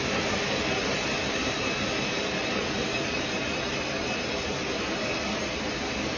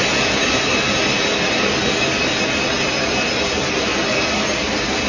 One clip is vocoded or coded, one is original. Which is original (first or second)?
second